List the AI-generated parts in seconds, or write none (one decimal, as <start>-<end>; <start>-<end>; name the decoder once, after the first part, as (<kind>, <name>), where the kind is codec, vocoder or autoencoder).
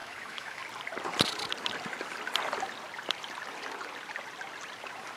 0.0-0.6 (autoencoder, DAC-VAE)